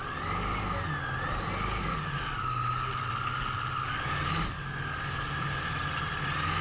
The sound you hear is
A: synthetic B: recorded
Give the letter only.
B